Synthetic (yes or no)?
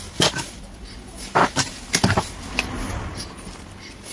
no